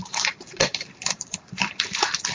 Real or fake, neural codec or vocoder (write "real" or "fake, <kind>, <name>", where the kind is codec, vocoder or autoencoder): fake, vocoder, BigVGAN v2